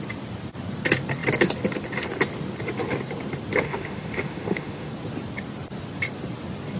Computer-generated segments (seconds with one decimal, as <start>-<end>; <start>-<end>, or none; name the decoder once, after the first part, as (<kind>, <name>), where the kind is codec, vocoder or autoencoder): 3.6-4.9 (autoencoder, DAC-VAE)